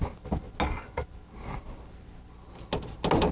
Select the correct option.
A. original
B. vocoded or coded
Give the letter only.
A